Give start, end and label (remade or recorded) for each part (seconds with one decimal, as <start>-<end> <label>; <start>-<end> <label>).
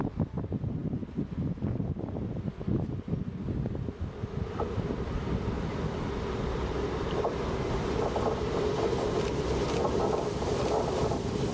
0.0-11.5 recorded